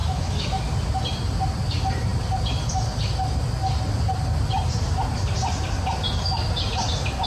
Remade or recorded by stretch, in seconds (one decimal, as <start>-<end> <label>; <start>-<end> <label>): 0.0-0.6 remade; 0.6-7.3 recorded